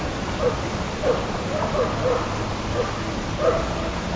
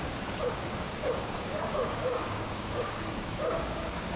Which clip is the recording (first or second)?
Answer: first